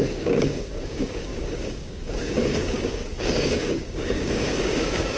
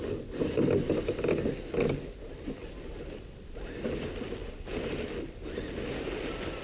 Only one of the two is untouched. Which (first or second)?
second